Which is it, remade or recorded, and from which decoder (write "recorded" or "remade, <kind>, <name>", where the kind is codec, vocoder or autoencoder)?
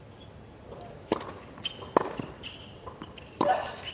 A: recorded